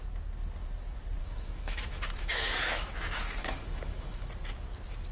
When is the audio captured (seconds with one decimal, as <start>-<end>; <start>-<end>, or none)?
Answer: 0.0-1.2; 4.3-5.1